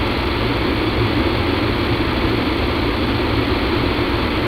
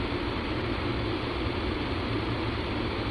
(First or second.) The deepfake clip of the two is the second